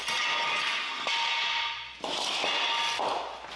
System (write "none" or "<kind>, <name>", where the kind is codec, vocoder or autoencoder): none